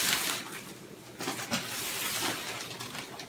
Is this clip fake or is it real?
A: real